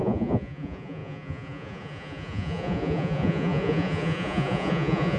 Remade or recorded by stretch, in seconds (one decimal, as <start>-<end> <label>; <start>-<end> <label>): 0.0-5.2 remade